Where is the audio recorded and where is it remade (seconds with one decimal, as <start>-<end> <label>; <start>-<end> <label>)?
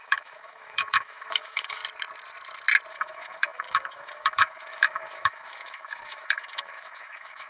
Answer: 0.0-1.8 remade; 1.8-2.9 recorded; 2.9-7.5 remade